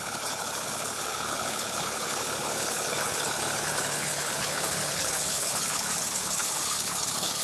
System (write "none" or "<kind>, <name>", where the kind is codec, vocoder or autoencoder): codec, HILCodec